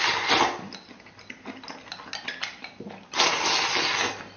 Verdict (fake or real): real